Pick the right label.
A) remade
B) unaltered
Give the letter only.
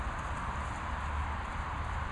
B